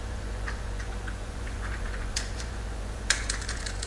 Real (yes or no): no